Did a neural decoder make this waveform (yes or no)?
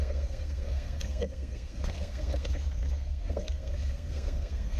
yes